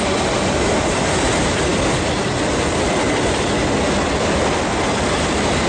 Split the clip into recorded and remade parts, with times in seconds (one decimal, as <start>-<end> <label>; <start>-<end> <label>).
0.0-5.7 recorded